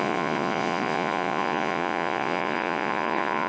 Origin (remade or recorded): remade